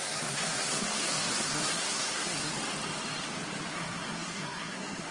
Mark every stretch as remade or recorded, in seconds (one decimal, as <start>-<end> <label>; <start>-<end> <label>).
0.0-2.5 remade; 2.5-3.7 recorded; 3.7-5.1 remade